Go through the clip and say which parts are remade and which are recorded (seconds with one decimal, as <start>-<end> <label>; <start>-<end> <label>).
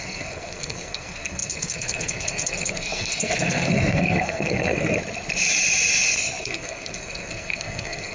0.0-5.0 remade; 5.0-6.4 recorded; 6.4-8.1 remade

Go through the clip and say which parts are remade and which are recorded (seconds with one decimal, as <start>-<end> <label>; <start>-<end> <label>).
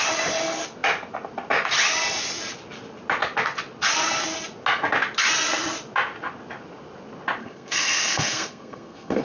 0.0-7.4 recorded; 7.4-9.2 remade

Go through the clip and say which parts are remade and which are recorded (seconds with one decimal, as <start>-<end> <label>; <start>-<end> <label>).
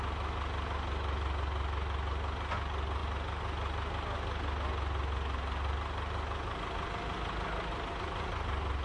0.0-8.8 recorded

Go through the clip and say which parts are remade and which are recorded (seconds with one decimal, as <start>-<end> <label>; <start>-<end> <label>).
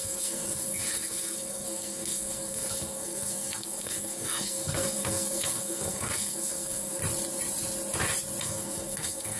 0.0-7.0 remade; 7.0-8.4 recorded; 8.4-9.4 remade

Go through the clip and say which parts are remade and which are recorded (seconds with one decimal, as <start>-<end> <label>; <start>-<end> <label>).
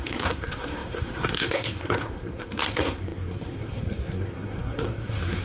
0.0-5.4 remade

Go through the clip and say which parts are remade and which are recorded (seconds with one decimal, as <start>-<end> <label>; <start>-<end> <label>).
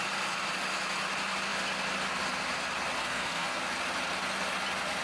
0.0-3.0 recorded; 3.0-3.6 remade; 3.6-5.0 recorded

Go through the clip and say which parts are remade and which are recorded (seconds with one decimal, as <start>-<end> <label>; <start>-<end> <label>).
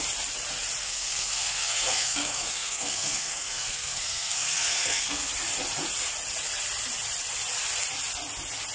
0.0-0.8 recorded; 0.8-5.3 remade; 5.3-8.7 recorded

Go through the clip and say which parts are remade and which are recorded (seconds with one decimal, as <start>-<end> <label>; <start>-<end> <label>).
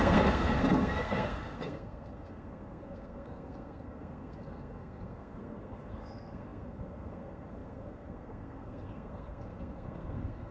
0.0-10.5 remade